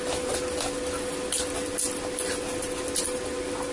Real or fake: real